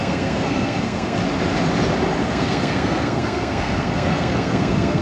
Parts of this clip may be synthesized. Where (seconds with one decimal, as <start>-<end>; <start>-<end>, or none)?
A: 0.0-1.2; 2.2-5.0